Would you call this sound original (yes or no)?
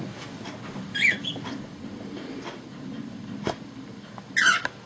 yes